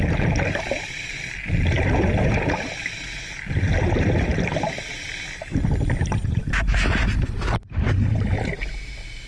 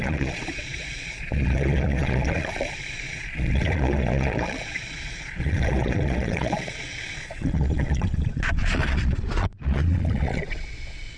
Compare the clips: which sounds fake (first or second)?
second